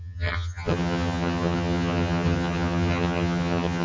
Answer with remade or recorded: remade